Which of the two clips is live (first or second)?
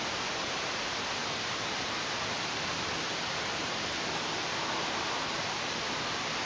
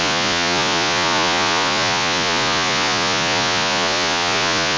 first